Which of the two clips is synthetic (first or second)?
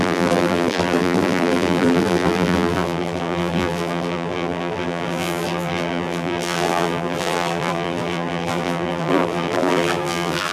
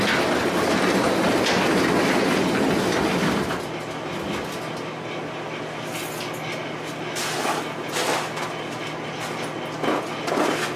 first